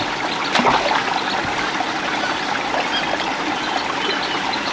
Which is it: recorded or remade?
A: recorded